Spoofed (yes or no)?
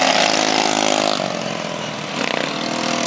no